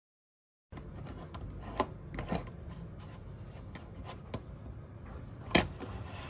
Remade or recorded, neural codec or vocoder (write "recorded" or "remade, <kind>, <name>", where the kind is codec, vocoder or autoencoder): recorded